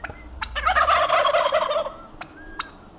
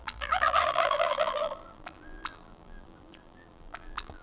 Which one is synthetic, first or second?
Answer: second